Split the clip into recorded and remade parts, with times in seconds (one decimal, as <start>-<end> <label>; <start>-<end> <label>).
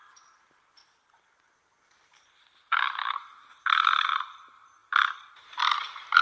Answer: 0.0-6.2 recorded